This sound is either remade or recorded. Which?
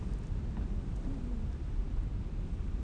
recorded